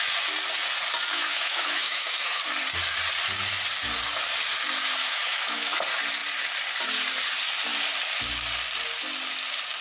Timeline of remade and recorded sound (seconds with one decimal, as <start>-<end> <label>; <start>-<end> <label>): 0.0-1.1 recorded; 1.1-2.4 remade; 2.4-5.0 recorded; 5.0-5.8 remade; 5.8-9.8 recorded